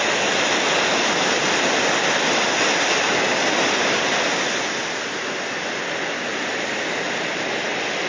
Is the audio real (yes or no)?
yes